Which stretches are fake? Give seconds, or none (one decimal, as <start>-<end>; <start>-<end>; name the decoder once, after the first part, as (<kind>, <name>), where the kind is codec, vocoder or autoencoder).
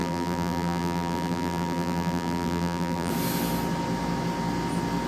0.0-3.1 (vocoder, BigVGAN v2)